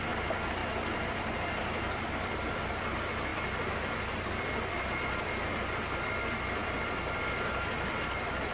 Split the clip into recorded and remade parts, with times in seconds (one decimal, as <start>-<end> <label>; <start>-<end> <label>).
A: 0.0-0.6 recorded; 0.6-2.7 remade; 2.7-3.3 recorded; 3.3-4.3 remade; 4.3-8.5 recorded